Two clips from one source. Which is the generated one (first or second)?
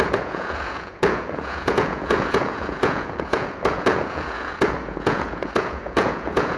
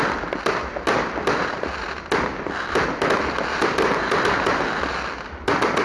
first